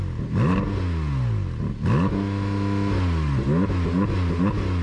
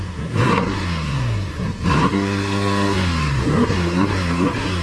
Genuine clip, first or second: first